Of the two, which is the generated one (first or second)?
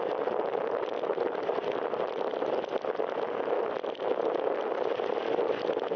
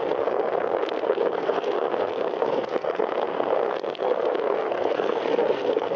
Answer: second